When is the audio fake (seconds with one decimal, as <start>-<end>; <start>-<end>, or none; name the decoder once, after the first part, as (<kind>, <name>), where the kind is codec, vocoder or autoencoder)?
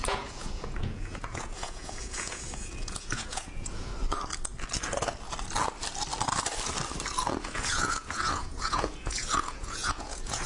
0.0-3.9 (vocoder, Vocos); 7.4-10.5